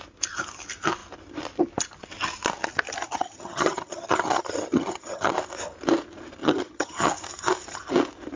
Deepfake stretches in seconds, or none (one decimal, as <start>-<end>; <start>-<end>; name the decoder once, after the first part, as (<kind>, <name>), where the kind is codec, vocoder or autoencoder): 3.0-5.3 (vocoder, HiFi-GAN); 6.4-7.1